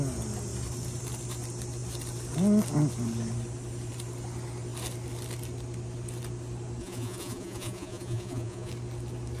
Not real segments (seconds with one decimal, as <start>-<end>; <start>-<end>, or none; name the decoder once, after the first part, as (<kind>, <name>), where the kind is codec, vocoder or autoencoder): 6.8-8.7 (vocoder, Vocos)